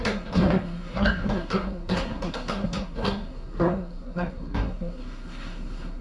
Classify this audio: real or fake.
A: fake